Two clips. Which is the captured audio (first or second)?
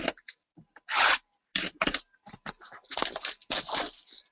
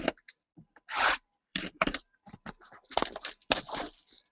first